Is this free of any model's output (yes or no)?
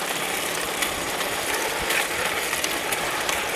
no